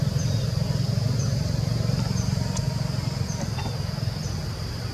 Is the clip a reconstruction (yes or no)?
no